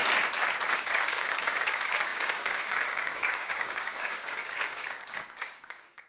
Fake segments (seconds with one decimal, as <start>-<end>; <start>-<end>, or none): 0.7-6.1